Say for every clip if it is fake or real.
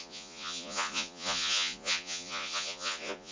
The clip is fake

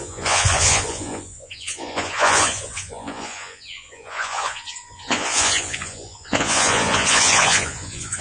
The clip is fake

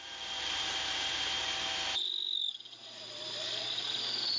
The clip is real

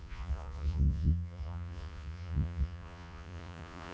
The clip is fake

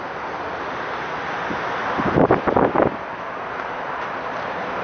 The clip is real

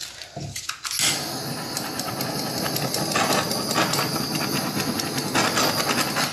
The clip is real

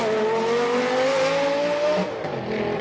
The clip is real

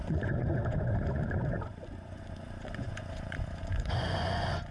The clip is fake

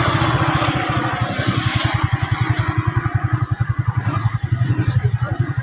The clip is real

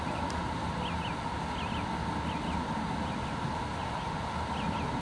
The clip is real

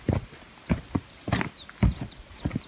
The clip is real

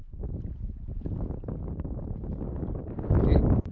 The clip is real